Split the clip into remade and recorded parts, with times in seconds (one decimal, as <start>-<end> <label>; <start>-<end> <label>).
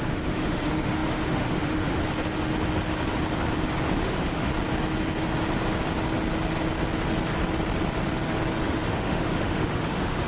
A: 0.0-2.0 remade; 2.0-4.0 recorded; 4.0-4.5 remade; 4.5-8.6 recorded; 8.6-10.3 remade